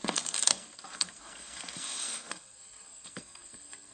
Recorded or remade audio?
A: remade